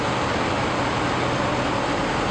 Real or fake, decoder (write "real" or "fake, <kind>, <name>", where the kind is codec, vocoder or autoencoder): real